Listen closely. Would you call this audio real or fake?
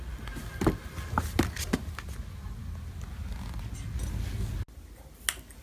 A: real